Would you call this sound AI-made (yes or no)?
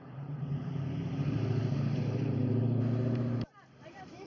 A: yes